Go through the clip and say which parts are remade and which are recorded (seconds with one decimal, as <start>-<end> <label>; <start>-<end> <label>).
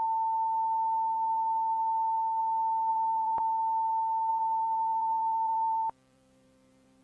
0.0-2.9 recorded; 2.9-3.4 remade; 3.4-4.3 recorded; 4.3-7.0 remade